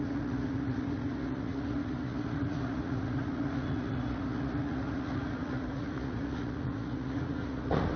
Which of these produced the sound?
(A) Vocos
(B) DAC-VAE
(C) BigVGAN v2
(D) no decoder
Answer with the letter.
A